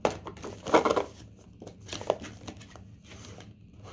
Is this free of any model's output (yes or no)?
yes